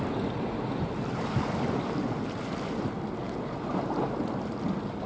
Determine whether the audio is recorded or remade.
recorded